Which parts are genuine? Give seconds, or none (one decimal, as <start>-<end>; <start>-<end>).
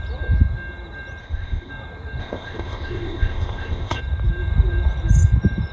0.0-1.2; 1.7-2.2; 4.0-5.7